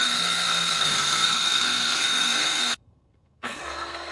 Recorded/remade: remade